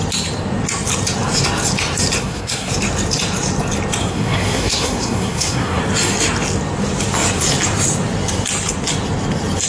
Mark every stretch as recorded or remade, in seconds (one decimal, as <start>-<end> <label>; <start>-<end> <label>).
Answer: 0.0-2.2 recorded; 2.2-2.7 remade; 2.7-4.0 recorded; 4.0-5.8 remade; 5.8-9.7 recorded